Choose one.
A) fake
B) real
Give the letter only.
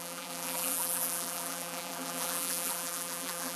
A